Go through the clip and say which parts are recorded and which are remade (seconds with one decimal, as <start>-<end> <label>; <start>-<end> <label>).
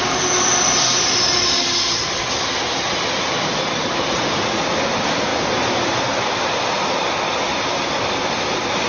0.0-8.9 recorded